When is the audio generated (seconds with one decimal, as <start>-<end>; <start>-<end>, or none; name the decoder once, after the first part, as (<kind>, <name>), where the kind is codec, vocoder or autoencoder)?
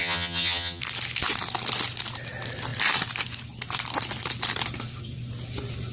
0.0-0.8 (vocoder, HiFi-GAN)